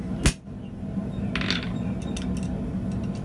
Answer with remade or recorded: recorded